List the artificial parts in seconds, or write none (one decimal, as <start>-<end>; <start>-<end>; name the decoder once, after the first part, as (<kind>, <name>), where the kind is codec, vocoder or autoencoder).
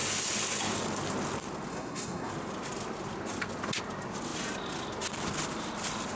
1.7-2.3 (codec, SNAC)